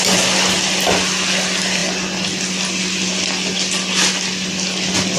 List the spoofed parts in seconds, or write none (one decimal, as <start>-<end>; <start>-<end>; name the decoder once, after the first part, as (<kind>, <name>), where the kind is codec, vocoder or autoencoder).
none